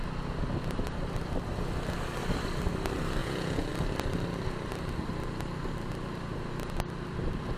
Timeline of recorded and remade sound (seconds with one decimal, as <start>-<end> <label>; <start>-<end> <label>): 0.0-3.2 recorded; 3.2-3.7 remade; 3.7-7.6 recorded